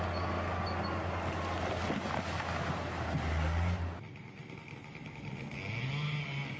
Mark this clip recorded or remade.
recorded